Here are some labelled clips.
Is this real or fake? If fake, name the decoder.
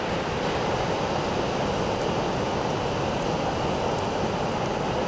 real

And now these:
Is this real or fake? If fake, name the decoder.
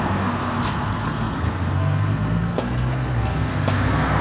fake, codec, SNAC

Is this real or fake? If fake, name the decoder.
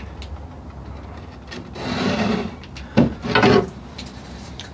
real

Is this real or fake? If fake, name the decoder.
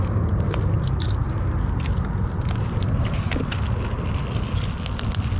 real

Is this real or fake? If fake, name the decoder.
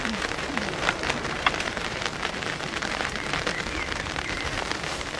fake, vocoder, BigVGAN v2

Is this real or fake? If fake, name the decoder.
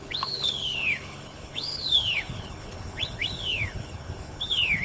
fake, codec, HILCodec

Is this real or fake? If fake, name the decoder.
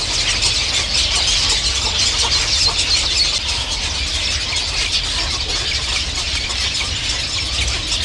real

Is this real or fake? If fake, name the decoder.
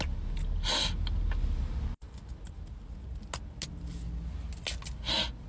real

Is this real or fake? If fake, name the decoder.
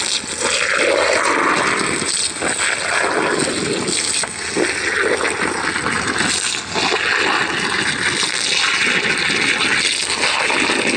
real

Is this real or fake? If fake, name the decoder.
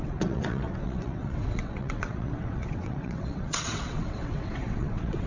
fake, vocoder, WaveNeXt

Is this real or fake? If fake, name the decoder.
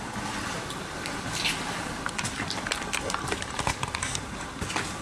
fake, vocoder, BigVGAN v2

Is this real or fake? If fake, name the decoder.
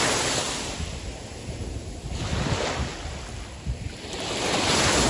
real